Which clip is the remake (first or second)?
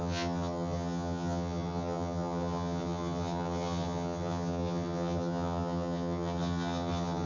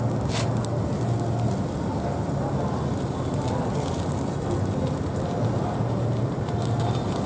first